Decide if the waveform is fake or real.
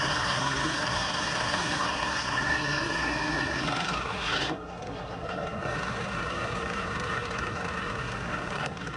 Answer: fake